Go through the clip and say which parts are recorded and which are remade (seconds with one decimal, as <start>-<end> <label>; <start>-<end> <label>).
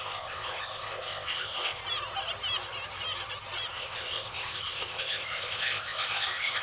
0.0-1.8 remade; 1.8-3.7 recorded; 3.7-6.6 remade